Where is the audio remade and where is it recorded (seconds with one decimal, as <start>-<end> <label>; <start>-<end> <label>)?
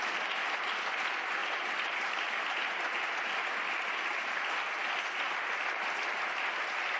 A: 0.0-7.0 recorded